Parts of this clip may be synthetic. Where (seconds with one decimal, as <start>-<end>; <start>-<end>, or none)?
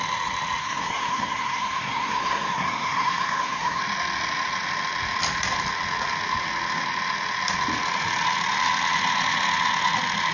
0.6-3.8